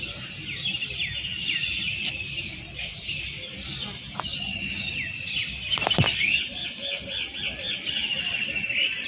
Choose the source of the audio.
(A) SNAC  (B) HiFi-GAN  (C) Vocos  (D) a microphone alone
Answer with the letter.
D